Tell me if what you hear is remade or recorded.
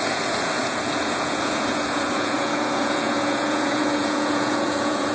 remade